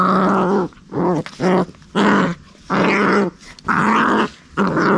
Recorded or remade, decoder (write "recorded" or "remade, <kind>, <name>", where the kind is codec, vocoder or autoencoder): recorded